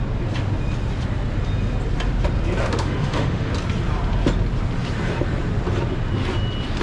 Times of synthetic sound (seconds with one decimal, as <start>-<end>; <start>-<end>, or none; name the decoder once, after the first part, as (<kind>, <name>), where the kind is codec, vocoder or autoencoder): 2.6-3.5 (autoencoder, DAC-VAE)